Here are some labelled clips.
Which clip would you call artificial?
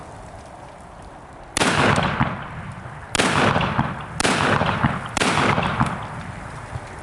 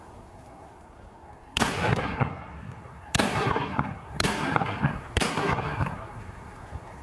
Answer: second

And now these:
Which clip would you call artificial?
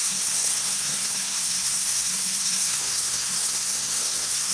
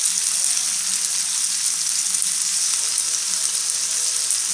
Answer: first